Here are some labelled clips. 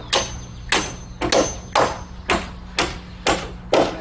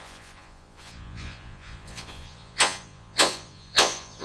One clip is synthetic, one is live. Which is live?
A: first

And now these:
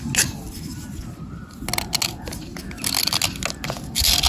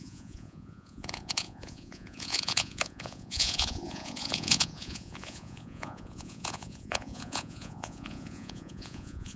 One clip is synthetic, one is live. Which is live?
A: first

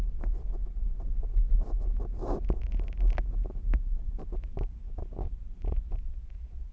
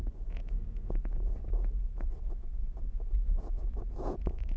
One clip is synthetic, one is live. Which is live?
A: first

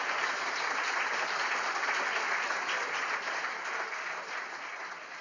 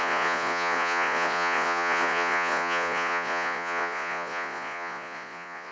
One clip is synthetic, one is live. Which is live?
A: first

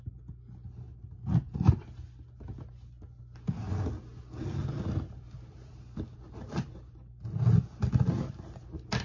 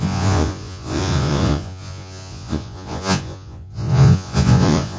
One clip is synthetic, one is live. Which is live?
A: first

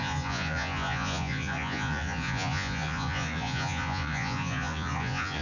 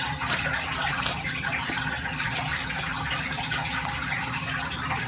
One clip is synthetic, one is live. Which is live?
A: second